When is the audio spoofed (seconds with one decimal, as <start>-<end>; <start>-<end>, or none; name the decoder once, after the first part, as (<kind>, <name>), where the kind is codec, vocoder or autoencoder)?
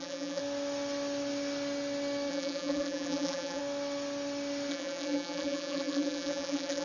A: 0.0-0.4 (vocoder, BigVGAN v2); 2.3-3.6; 4.7-6.8